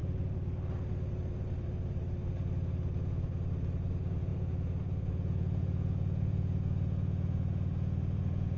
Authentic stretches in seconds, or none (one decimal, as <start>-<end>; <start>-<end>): 0.0-3.9